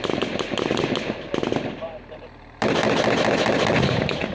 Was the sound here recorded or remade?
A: recorded